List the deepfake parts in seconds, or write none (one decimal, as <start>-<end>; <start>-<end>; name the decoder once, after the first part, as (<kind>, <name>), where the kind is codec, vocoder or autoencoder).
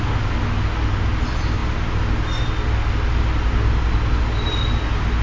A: none